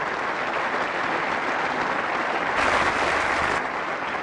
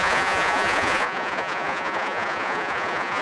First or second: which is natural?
first